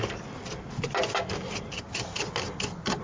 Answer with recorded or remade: recorded